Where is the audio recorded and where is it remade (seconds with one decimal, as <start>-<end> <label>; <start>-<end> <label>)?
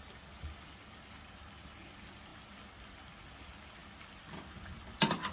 0.0-5.3 recorded